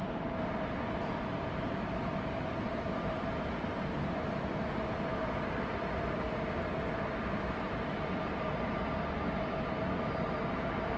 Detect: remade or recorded recorded